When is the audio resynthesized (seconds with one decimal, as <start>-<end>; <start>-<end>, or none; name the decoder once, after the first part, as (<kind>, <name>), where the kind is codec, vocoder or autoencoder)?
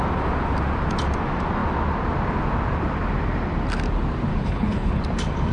4.3-5.0 (codec, HILCodec)